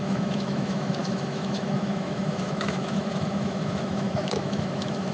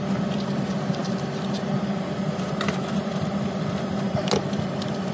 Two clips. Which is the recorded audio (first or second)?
second